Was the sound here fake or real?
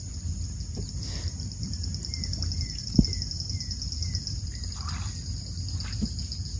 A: real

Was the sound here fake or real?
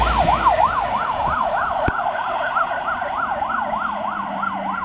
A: real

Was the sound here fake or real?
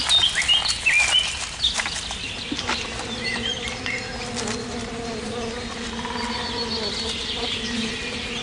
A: real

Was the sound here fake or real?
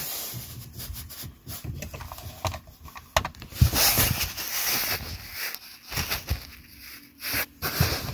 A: real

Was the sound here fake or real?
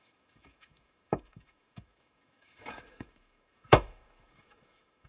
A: fake